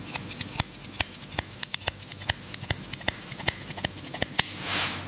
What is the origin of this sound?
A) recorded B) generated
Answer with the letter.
A